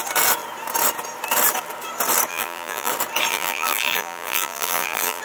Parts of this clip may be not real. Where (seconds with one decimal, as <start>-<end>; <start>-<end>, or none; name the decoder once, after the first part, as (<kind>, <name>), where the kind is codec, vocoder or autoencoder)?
2.3-2.9 (vocoder, BigVGAN v2); 3.3-5.2